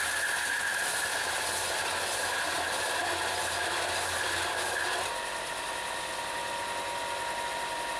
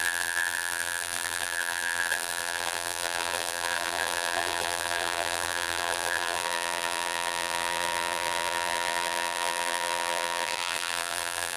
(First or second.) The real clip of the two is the first